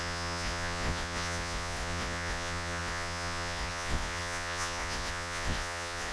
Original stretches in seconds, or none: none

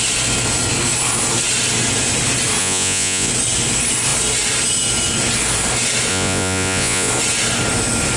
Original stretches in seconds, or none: 0.0-2.6; 3.3-6.1; 7.1-8.2

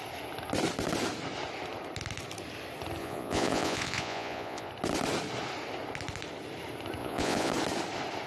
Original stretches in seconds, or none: 0.0-3.0; 4.7-7.0; 7.5-8.3